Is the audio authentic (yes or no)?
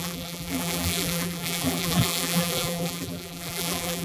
no